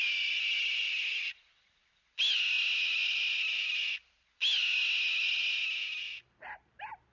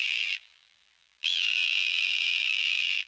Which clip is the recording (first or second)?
first